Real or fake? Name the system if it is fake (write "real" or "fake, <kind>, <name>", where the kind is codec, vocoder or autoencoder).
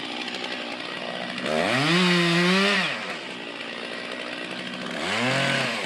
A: real